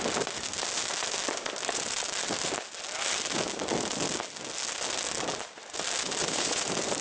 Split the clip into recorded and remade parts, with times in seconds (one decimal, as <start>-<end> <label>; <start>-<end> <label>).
0.0-6.2 recorded; 6.2-7.0 remade